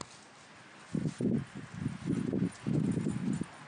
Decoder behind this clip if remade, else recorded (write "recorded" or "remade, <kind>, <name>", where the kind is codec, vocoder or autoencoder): recorded